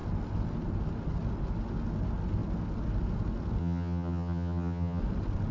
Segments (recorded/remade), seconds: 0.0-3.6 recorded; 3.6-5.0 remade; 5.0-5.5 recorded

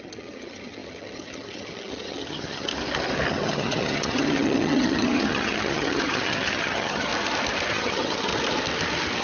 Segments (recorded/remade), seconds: 0.0-2.7 remade; 2.7-3.3 recorded; 3.3-7.1 remade; 7.1-7.7 recorded; 7.7-8.3 remade; 8.3-9.2 recorded

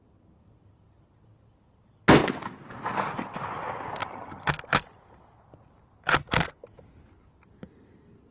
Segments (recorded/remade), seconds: 0.0-4.0 recorded; 4.0-4.5 remade; 4.5-8.3 recorded

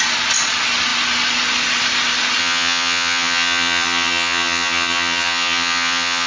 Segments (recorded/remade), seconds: 0.0-2.4 recorded; 2.4-6.3 remade

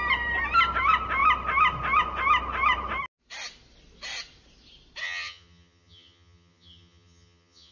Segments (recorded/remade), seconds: 0.0-5.0 recorded; 5.0-7.7 remade